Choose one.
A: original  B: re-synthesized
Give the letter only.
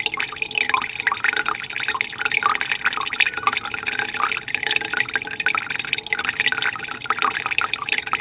A